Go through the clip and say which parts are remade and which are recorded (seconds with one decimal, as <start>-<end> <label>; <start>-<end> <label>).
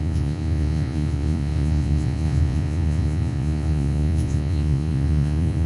0.0-5.7 remade